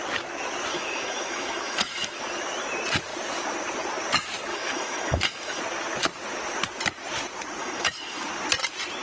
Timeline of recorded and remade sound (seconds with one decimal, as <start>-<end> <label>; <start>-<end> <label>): 0.0-0.7 recorded; 0.7-2.2 remade; 2.2-4.5 recorded; 4.5-5.6 remade; 5.6-7.6 recorded; 7.6-8.2 remade; 8.2-9.0 recorded